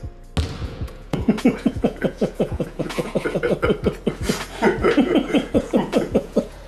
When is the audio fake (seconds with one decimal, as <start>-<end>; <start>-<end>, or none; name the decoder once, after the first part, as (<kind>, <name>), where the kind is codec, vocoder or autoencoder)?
0.6-3.5 (vocoder, Vocos); 4.8-6.7